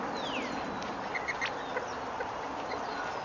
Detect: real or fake real